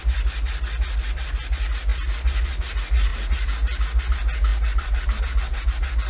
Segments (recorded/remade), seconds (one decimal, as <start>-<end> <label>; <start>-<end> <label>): 0.0-4.5 recorded; 4.5-5.2 remade; 5.2-6.1 recorded